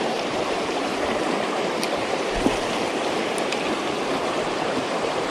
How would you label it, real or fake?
fake